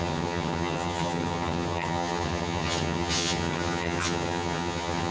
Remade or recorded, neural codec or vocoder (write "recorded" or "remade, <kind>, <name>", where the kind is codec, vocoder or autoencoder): remade, vocoder, HiFi-GAN